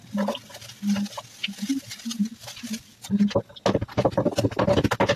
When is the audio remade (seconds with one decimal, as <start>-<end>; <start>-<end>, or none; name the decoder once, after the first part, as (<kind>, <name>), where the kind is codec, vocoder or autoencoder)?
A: none